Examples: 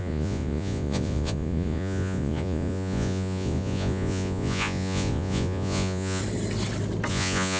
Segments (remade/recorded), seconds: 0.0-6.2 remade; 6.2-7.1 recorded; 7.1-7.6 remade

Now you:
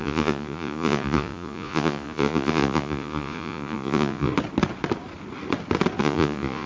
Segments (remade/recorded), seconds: 0.0-4.3 remade; 4.3-6.0 recorded; 6.0-6.7 remade